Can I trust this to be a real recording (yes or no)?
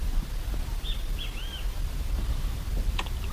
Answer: yes